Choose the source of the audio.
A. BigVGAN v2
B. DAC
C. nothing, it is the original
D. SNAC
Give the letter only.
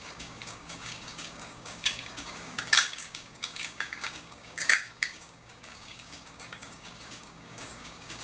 B